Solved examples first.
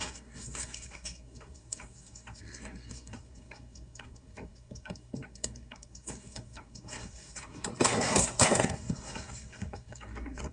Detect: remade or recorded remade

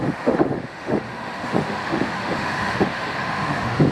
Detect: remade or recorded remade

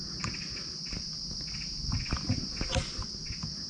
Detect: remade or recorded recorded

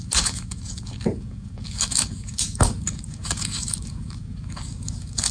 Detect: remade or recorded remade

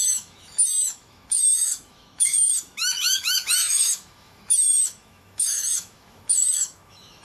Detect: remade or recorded remade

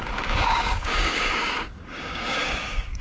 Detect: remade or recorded remade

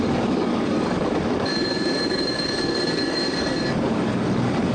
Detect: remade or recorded remade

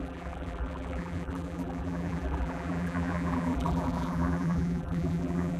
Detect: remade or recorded remade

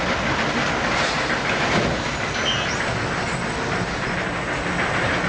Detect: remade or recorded recorded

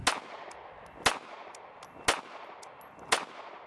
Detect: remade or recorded recorded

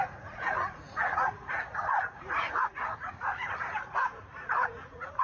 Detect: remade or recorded remade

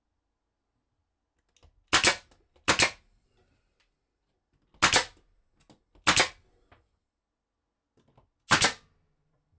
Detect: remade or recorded recorded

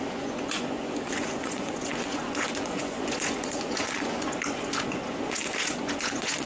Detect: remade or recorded remade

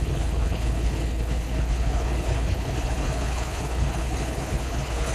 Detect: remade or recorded remade